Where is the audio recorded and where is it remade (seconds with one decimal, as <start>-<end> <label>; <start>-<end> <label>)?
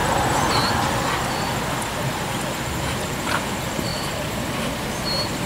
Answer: 0.0-0.7 remade; 0.7-3.9 recorded; 3.9-4.4 remade; 4.4-5.5 recorded